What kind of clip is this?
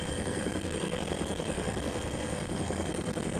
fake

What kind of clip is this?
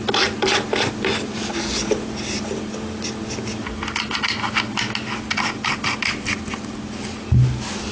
real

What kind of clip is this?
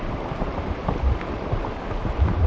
real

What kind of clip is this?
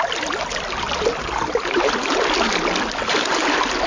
real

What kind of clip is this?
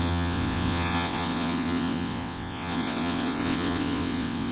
fake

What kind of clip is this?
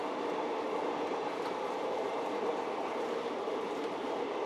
real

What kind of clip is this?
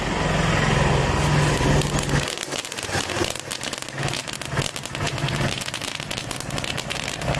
real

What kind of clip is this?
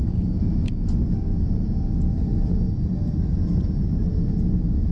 real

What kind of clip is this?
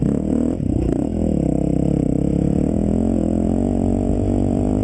real